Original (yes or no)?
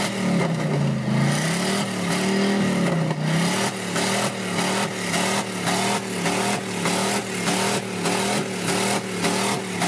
yes